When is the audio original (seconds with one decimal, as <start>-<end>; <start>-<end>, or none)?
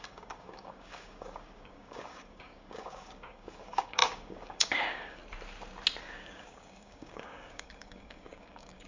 5.2-6.0